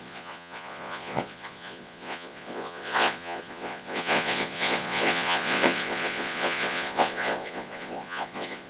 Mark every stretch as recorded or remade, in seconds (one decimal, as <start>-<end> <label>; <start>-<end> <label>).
0.0-8.7 remade